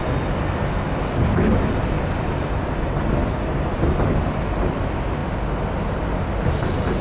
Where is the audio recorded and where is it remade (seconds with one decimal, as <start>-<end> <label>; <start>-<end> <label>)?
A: 0.0-7.0 recorded